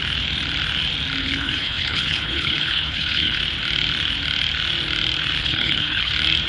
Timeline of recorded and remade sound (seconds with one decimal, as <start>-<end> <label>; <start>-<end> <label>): 0.0-1.2 recorded; 1.2-3.4 remade; 3.4-5.4 recorded; 5.4-6.1 remade; 6.1-6.5 recorded